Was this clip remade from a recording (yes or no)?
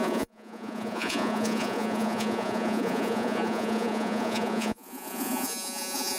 yes